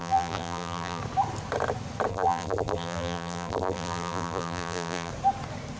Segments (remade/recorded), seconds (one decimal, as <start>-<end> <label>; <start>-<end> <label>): 0.0-1.0 remade; 1.0-2.1 recorded; 2.1-5.1 remade; 5.1-5.8 recorded